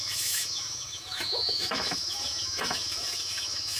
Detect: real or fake fake